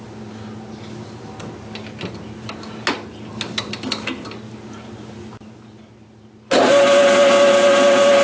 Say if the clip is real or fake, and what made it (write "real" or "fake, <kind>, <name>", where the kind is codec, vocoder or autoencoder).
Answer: real